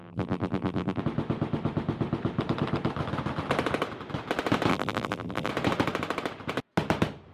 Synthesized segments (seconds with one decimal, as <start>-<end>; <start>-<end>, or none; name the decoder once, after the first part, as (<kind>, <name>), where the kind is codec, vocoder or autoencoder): 0.0-1.0 (vocoder, BigVGAN v2); 4.7-5.5